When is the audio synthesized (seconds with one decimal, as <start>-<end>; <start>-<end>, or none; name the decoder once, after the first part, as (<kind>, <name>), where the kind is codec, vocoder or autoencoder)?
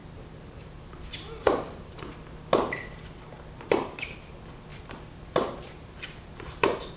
0.0-1.9 (vocoder, BigVGAN v2); 4.7-6.5